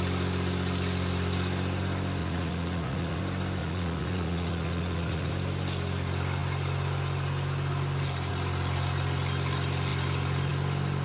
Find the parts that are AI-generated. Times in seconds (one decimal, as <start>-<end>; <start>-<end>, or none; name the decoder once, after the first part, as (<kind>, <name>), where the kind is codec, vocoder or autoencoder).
2.2-3.2 (vocoder, Vocos); 3.6-5.3